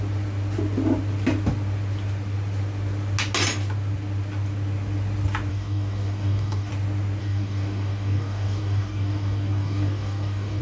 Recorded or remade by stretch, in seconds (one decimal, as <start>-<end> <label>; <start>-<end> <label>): 0.0-5.5 recorded; 5.5-6.7 remade; 6.7-7.2 recorded; 7.2-10.6 remade